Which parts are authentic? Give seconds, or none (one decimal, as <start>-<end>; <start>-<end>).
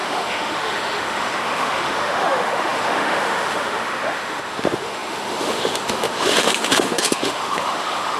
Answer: none